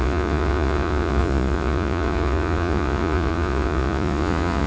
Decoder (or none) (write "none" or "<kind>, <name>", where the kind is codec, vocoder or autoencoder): vocoder, Vocos